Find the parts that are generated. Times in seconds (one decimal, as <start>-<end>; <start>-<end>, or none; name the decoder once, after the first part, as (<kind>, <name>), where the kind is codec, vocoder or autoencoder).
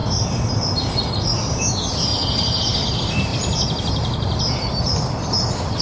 none